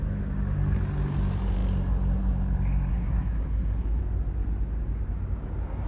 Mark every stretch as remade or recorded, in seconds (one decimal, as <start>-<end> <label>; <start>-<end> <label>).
0.0-2.9 recorded; 2.9-4.0 remade; 4.0-5.9 recorded